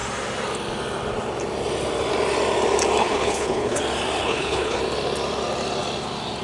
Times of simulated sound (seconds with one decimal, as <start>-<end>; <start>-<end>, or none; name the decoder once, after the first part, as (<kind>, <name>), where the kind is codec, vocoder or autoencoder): 3.0-3.8 (codec, HILCodec); 4.2-4.8